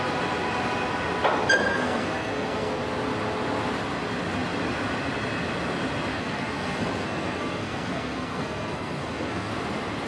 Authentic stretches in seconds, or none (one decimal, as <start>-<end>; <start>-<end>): 0.0-1.7; 2.8-6.1; 9.5-10.1